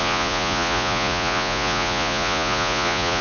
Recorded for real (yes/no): no